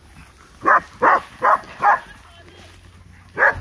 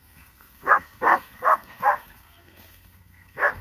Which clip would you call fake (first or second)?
second